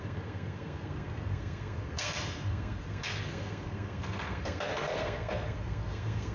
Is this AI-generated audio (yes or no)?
yes